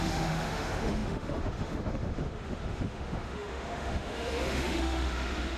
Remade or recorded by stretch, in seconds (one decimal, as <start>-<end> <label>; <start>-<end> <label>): 0.0-5.6 remade